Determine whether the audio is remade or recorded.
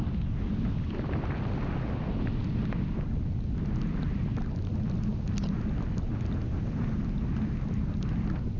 recorded